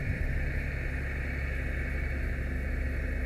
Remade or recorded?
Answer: recorded